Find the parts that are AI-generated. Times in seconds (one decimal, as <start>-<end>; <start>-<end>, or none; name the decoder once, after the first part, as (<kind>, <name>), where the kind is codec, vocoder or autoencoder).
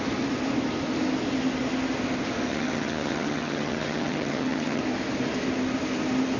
2.5-4.8 (vocoder, HiFi-GAN)